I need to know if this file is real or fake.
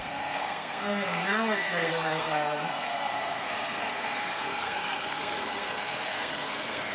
fake